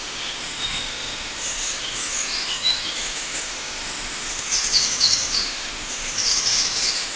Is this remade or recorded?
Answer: remade